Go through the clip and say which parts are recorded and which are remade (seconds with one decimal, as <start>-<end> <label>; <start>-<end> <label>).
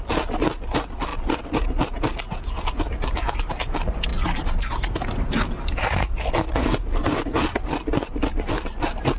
0.0-9.2 recorded